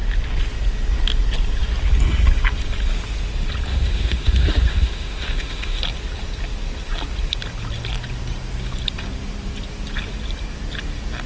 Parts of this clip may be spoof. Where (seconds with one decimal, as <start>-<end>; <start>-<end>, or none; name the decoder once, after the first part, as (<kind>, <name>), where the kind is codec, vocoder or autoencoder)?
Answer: 3.7-5.8 (autoencoder, DAC-VAE)